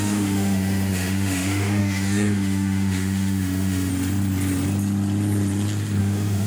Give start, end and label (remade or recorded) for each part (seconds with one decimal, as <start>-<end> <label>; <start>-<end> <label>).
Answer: 0.0-3.9 remade; 3.9-6.0 recorded; 6.0-6.5 remade

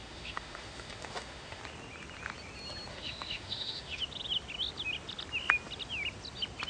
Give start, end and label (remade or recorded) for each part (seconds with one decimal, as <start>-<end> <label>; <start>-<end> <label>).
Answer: 0.0-1.6 remade; 1.6-2.9 recorded; 2.9-4.0 remade; 4.0-6.7 recorded

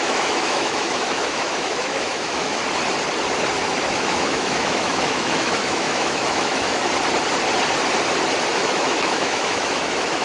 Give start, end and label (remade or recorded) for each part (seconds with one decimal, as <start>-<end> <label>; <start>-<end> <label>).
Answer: 0.0-2.6 remade; 2.6-3.6 recorded; 3.6-6.8 remade; 6.8-8.5 recorded; 8.5-10.2 remade

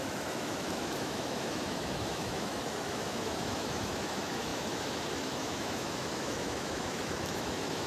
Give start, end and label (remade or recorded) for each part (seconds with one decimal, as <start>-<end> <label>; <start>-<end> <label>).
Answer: 0.0-7.9 remade

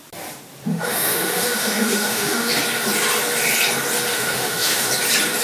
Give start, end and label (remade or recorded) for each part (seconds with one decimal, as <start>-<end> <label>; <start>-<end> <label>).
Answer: 0.0-0.7 recorded; 0.7-2.5 remade; 2.5-4.1 recorded; 4.1-4.9 remade; 4.9-5.4 recorded

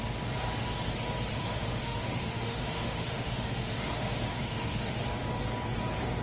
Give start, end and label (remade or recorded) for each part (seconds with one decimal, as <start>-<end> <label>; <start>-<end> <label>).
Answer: 0.0-1.3 recorded; 1.3-5.0 remade; 5.0-6.2 recorded

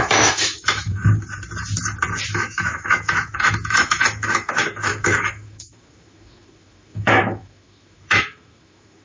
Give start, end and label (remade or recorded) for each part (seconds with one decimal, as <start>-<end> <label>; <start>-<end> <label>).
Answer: 0.0-1.0 remade; 1.0-2.3 recorded; 2.3-9.0 remade